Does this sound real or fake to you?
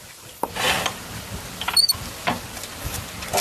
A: real